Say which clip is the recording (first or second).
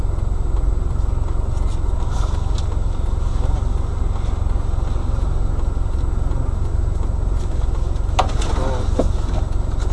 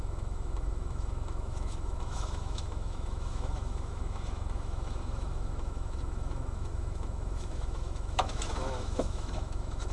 first